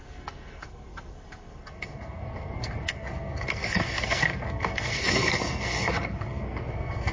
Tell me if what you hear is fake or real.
fake